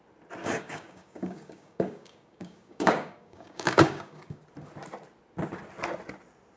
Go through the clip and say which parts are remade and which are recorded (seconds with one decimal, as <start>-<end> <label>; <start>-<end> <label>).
0.0-0.4 recorded; 0.4-4.4 remade; 4.4-6.6 recorded